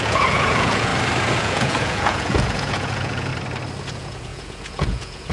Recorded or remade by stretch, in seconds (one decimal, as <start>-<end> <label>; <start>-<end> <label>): 0.0-0.9 remade; 0.9-1.4 recorded; 1.4-3.3 remade; 3.3-3.9 recorded; 3.9-5.3 remade